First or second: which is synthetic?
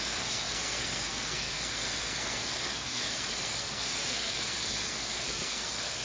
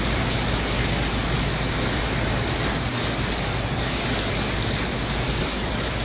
first